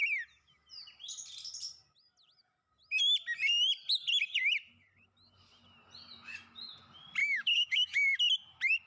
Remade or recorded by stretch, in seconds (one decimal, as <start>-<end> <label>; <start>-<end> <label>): 0.0-7.2 recorded; 7.2-8.2 remade; 8.2-8.9 recorded